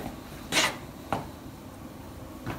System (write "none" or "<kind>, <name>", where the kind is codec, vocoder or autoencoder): none